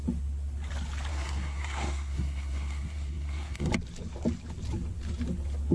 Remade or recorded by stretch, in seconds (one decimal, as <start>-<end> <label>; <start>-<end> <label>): 0.0-1.1 recorded; 1.1-3.7 remade; 3.7-5.7 recorded

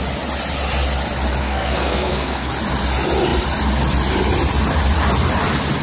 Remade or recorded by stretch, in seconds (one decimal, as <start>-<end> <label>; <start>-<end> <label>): 0.0-1.4 recorded; 1.4-2.5 remade; 2.5-5.8 recorded

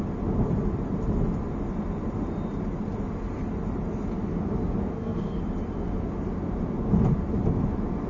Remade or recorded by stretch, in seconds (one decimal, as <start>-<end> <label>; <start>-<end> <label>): 0.0-4.8 recorded; 4.8-5.4 remade; 5.4-8.1 recorded

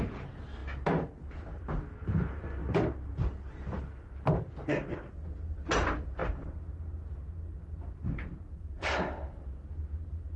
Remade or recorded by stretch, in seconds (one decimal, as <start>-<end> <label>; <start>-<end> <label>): 0.0-10.4 recorded

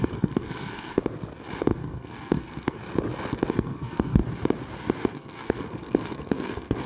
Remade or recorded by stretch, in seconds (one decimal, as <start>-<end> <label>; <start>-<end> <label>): 0.0-1.0 remade; 1.0-1.6 recorded; 1.6-2.8 remade; 2.8-3.5 recorded; 3.5-4.2 remade; 4.2-5.1 recorded; 5.1-6.9 remade

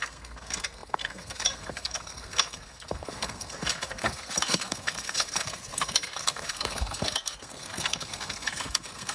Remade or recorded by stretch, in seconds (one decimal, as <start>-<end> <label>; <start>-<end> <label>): 0.0-9.1 remade